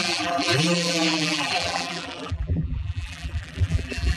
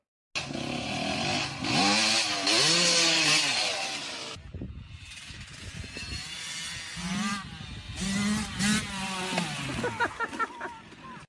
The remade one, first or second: first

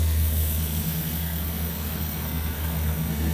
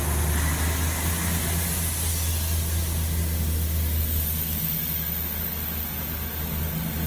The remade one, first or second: first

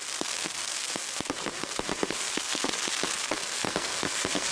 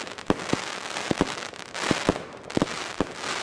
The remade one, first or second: first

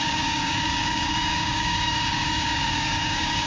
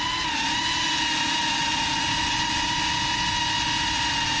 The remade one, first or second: first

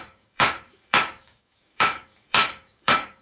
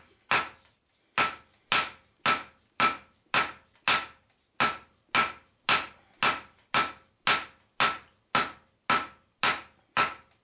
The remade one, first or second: first